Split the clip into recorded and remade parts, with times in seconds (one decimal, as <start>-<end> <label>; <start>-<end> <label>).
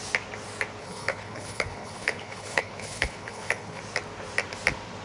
0.0-0.8 recorded; 0.8-3.8 remade; 3.8-5.0 recorded